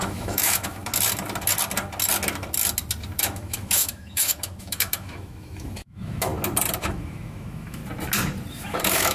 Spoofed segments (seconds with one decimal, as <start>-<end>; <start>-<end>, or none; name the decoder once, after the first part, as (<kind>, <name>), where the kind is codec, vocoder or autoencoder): 0.0-0.8 (autoencoder, DAC-VAE); 3.2-6.3; 6.8-7.8; 8.5-9.1